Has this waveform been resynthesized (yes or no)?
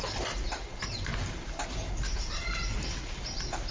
no